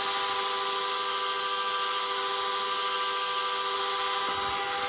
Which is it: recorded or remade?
recorded